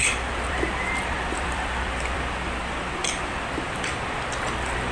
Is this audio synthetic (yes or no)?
yes